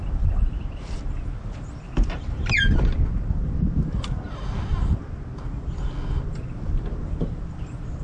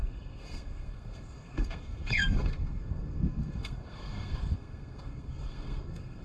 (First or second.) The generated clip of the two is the second